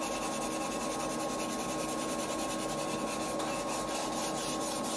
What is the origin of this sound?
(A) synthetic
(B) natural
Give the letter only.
B